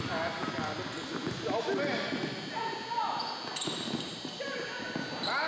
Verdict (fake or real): real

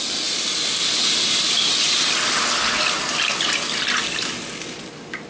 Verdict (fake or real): real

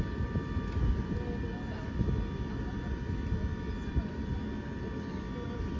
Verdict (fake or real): real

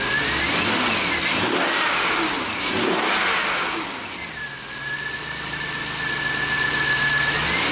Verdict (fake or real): real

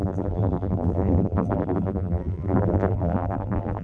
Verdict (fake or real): fake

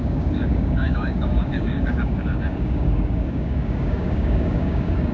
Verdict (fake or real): fake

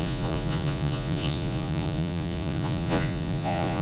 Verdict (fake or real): fake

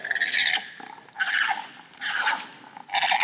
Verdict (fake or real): real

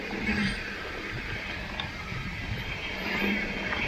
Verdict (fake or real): real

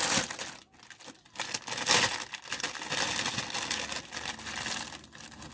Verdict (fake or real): real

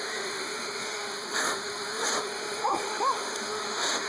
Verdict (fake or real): fake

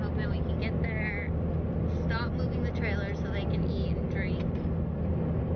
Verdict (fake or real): real